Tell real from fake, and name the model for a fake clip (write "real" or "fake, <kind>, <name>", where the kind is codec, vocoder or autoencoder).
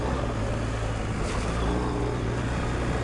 real